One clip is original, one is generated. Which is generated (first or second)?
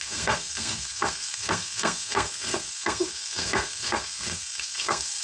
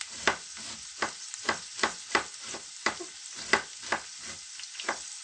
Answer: first